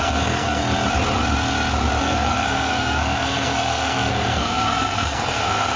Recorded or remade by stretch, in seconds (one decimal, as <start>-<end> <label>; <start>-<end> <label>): 0.0-0.6 remade; 0.6-2.0 recorded; 2.0-5.8 remade